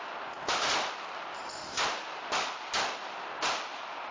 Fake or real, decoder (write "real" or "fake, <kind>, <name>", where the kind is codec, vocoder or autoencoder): real